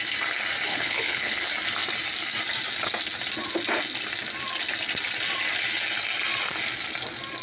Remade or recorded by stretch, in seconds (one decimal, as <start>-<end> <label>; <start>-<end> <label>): 0.0-0.7 recorded; 0.7-1.4 remade; 1.4-7.4 recorded

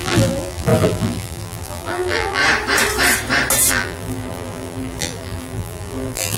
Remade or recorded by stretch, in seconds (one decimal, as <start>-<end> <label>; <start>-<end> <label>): 0.0-2.4 remade; 2.4-3.7 recorded; 3.7-6.4 remade

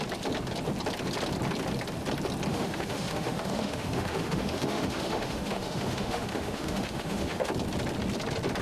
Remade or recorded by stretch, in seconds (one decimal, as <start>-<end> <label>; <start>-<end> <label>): 0.0-2.5 recorded; 2.5-7.5 remade; 7.5-8.6 recorded